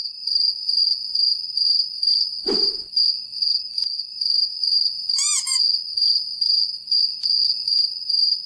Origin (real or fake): fake